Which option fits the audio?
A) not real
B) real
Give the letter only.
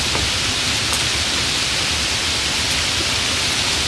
B